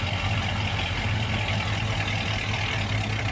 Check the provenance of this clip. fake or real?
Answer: real